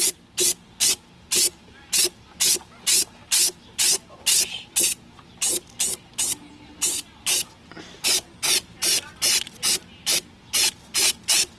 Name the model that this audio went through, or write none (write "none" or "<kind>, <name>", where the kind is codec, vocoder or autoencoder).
none